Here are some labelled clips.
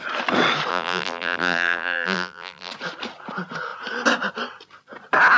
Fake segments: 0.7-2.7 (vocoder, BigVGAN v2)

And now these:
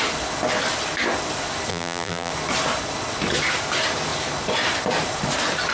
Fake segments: 1.7-2.3 (vocoder, BigVGAN v2)

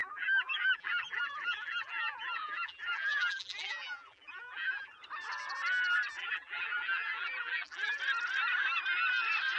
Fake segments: 0.0-4.9 (vocoder, BigVGAN v2); 6.2-8.0

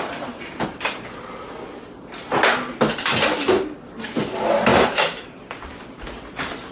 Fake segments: 4.7-5.8 (vocoder, BigVGAN v2)

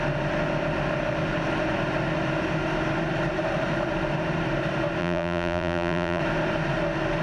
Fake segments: 5.0-6.2 (vocoder, BigVGAN v2)

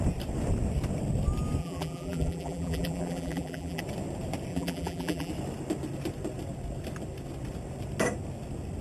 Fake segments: 1.6-3.8 (vocoder, BigVGAN v2); 4.5-5.3

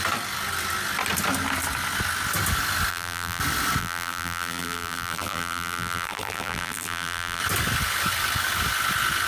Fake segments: 2.9-3.4 (vocoder, BigVGAN v2); 3.8-7.4